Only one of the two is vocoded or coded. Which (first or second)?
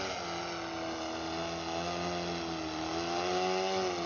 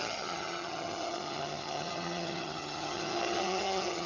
second